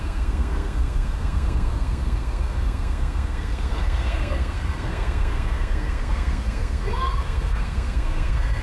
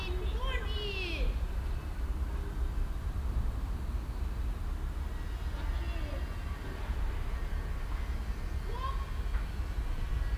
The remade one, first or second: first